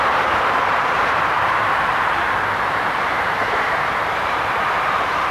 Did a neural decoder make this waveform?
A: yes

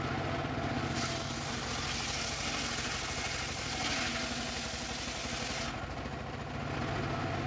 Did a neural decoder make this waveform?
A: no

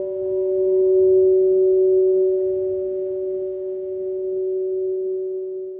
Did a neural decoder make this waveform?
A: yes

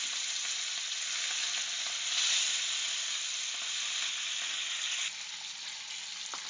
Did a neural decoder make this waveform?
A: no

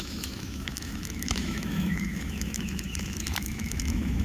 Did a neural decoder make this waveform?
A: yes